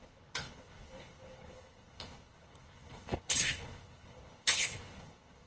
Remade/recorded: remade